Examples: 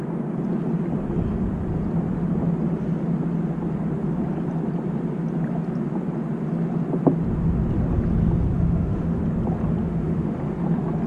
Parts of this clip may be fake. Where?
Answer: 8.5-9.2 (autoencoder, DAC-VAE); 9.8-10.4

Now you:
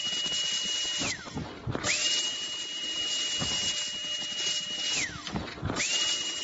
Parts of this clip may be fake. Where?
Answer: none